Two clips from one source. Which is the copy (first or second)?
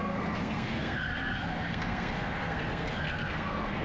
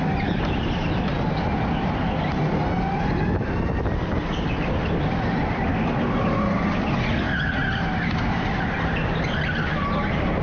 first